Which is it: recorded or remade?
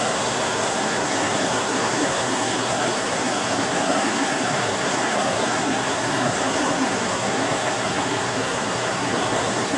remade